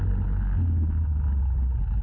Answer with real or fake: real